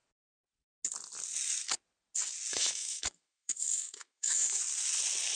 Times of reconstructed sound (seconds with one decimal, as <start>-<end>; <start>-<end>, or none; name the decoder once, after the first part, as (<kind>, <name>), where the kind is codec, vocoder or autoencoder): 2.5-4.6 (autoencoder, DAC-VAE)